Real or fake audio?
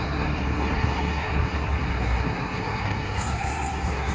fake